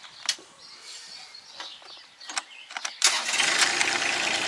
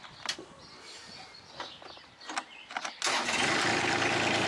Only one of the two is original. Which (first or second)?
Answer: second